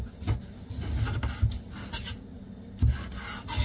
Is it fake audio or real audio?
real